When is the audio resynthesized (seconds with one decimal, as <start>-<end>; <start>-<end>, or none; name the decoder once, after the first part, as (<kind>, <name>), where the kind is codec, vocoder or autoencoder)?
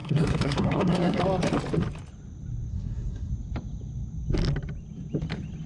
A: 0.0-1.2 (codec, SNAC); 2.7-3.3